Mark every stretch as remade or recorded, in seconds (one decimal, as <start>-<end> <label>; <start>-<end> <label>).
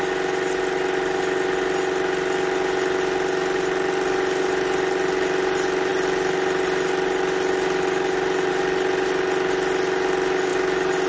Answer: 0.0-11.1 recorded